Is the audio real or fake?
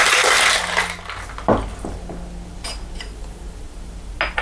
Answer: real